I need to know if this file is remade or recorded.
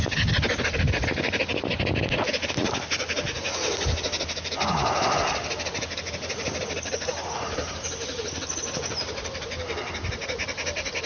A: recorded